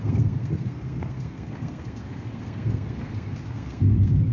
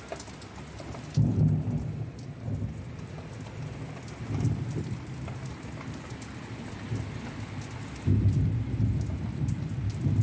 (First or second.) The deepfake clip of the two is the first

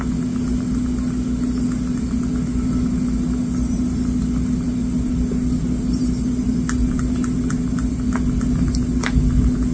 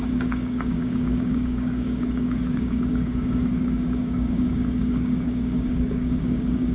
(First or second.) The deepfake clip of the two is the second